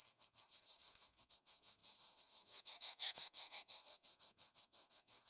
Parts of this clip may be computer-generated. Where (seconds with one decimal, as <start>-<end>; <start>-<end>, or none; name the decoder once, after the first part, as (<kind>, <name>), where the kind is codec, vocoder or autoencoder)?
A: 0.0-5.3 (codec, SNAC)